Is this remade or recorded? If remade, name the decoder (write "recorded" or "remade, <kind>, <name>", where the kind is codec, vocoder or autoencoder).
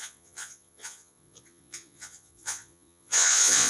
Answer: remade, vocoder, Vocos